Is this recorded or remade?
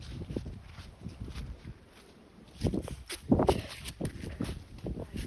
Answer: recorded